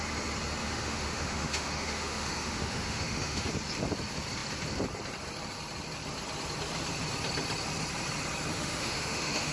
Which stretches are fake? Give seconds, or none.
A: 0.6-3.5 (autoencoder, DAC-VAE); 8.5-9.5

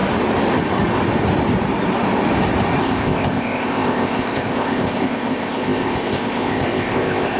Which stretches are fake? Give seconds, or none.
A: 2.8-7.4 (codec, ZipCodec)

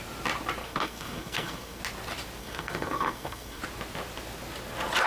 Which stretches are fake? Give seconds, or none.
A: 0.6-1.8 (codec, SNAC); 2.4-3.6

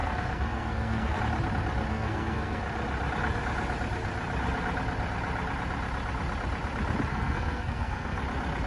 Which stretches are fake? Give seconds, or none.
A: 0.0-1.2 (codec, SNAC); 1.9-2.6; 7.1-8.2

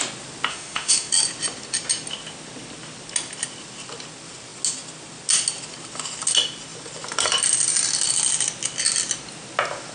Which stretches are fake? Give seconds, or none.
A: 0.5-1.1 (autoencoder, DAC-VAE)

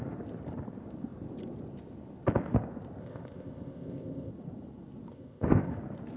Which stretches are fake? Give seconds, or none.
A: 3.0-4.3 (codec, ZipCodec); 5.1-5.7

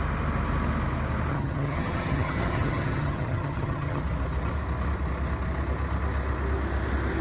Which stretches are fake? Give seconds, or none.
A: 1.3-4.0 (vocoder, HiFi-GAN)

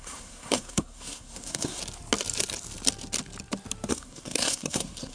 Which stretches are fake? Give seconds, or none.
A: 0.0-1.8 (codec, SNAC); 3.9-5.1